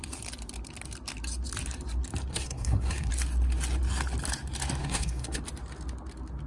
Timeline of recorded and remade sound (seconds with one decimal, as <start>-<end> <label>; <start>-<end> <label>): 0.0-2.3 recorded; 2.3-3.1 remade; 3.1-4.8 recorded; 4.8-5.4 remade; 5.4-6.5 recorded